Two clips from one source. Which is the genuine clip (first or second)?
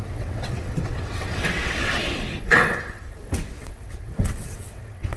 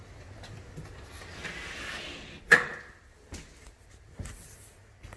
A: second